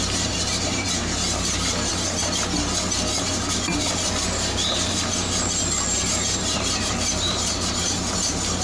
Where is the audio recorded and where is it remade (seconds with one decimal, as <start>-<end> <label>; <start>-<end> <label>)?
0.0-1.9 remade; 1.9-6.1 recorded; 6.1-8.6 remade